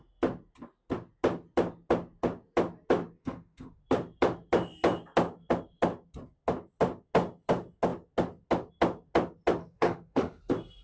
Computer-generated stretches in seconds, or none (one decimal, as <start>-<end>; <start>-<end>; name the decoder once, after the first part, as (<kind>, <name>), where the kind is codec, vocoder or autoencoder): 3.2-3.8 (autoencoder, DAC-VAE); 9.6-10.4